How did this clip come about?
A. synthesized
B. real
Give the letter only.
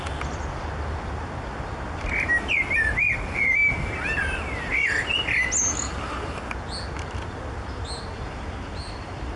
B